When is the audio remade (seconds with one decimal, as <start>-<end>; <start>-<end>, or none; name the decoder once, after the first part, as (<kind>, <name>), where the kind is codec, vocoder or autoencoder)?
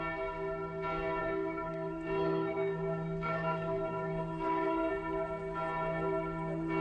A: 1.2-4.9 (codec, SNAC)